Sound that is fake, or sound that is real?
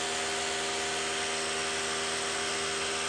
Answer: real